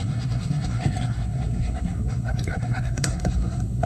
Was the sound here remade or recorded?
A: remade